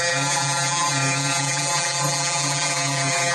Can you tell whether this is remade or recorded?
remade